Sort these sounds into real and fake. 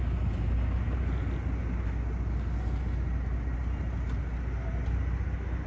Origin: real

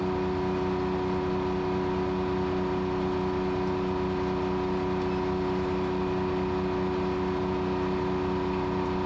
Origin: real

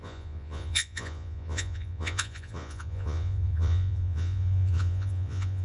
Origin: fake